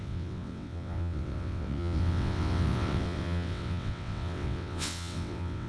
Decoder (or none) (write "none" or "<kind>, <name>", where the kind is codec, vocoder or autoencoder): vocoder, WaveNeXt